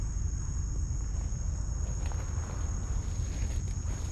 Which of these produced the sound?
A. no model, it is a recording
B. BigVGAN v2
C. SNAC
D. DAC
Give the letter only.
A